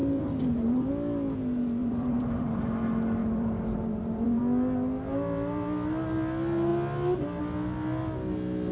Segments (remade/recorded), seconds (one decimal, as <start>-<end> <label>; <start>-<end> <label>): 0.0-0.9 remade; 0.9-1.8 recorded; 1.8-2.7 remade; 2.7-3.2 recorded; 3.2-4.4 remade; 4.4-8.7 recorded